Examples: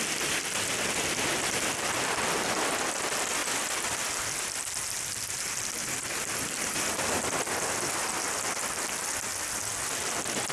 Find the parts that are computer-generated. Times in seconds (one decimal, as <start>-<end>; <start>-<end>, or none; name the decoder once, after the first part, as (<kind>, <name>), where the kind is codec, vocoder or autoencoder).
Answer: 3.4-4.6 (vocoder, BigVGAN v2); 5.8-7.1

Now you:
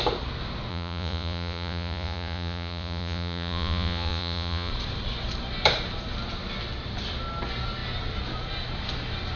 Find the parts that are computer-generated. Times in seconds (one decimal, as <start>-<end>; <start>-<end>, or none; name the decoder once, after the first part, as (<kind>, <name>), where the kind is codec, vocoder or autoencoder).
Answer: 0.7-4.7 (vocoder, Vocos)

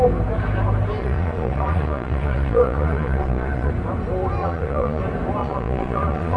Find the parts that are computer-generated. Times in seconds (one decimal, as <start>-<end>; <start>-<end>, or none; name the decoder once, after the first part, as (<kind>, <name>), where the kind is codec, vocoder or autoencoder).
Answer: 1.0-3.7 (vocoder, Vocos); 4.4-5.0; 5.4-6.4

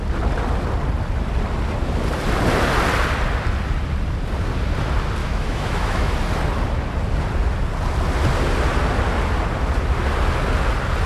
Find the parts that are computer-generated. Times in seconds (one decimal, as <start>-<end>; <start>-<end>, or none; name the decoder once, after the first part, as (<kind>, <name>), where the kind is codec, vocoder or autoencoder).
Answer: 5.2-6.1 (autoencoder, DAC-VAE)

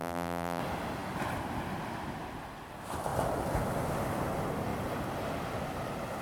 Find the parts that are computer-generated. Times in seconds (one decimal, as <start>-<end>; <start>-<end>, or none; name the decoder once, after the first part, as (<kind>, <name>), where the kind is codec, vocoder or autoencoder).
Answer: 0.0-0.6 (vocoder, BigVGAN v2)

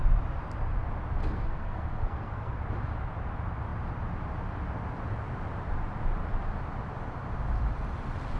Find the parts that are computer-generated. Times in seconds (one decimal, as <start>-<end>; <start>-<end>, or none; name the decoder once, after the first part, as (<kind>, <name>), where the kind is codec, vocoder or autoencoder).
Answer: 1.2-2.6 (codec, SNAC)

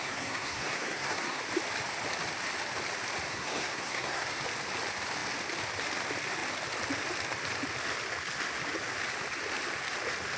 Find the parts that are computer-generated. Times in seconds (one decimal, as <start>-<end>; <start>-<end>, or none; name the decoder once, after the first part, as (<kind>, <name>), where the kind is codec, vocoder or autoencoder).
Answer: 0.0-1.4 (codec, SNAC); 3.3-4.4